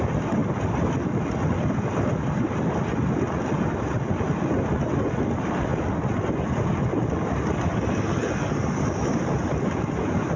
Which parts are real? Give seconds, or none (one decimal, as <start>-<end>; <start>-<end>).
0.0-10.4